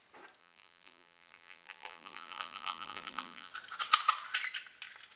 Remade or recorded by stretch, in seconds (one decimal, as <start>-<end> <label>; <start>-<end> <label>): 0.0-0.4 recorded; 0.4-3.5 remade; 3.5-5.2 recorded